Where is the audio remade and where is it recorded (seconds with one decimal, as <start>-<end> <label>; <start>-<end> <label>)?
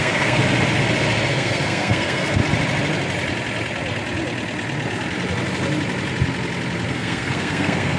0.0-0.4 remade; 0.4-1.3 recorded; 1.3-2.4 remade; 2.4-6.9 recorded; 6.9-8.0 remade